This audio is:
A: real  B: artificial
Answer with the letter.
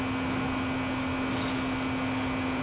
A